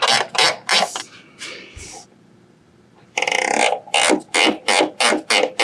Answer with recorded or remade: recorded